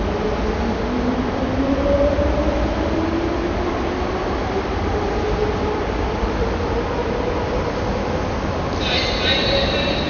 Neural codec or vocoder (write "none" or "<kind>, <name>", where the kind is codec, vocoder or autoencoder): none